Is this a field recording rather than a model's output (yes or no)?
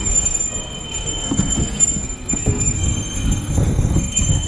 no